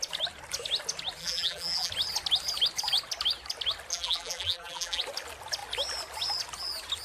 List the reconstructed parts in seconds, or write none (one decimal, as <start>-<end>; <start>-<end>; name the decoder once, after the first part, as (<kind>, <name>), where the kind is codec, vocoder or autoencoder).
1.2-1.9 (vocoder, BigVGAN v2); 3.9-5.0